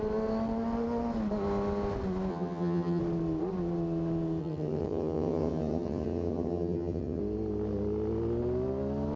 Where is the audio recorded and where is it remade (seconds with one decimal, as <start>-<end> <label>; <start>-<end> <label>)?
0.0-2.3 recorded; 2.3-3.0 remade; 3.0-4.4 recorded; 4.4-7.2 remade; 7.2-9.2 recorded